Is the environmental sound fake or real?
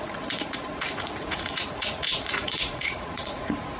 fake